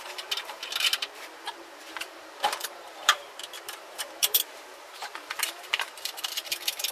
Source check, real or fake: fake